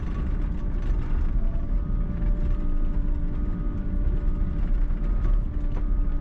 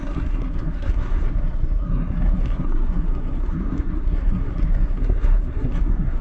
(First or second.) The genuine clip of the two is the first